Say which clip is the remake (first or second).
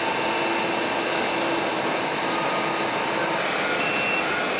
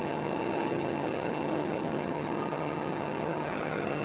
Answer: second